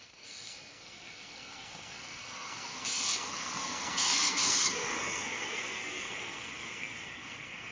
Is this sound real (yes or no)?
no